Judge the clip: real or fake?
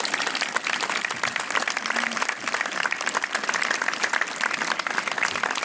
fake